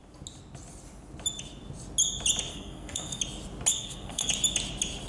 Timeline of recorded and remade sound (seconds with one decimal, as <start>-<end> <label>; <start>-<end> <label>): 0.0-2.5 recorded; 2.5-3.2 remade; 3.2-3.7 recorded; 3.7-4.3 remade; 4.3-5.1 recorded